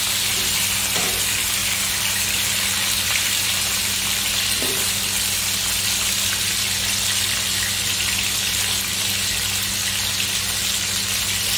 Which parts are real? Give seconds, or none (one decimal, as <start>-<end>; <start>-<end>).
0.0-1.6; 4.3-11.6